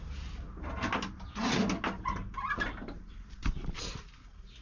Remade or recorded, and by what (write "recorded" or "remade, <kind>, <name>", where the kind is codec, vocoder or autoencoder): recorded